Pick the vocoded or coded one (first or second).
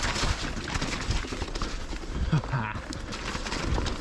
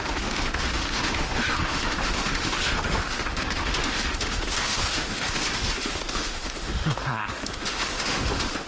second